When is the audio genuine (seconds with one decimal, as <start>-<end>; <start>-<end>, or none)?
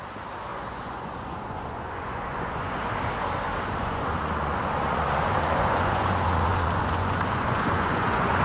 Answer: 0.0-0.5; 2.9-3.8